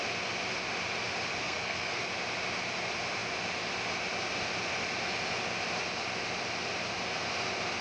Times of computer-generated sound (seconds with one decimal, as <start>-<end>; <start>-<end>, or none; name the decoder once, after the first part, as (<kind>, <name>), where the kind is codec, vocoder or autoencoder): 1.4-2.0 (codec, SNAC)